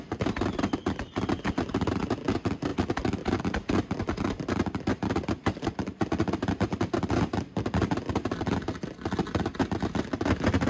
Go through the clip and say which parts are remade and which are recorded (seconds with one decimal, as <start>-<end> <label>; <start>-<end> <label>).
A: 0.0-10.7 recorded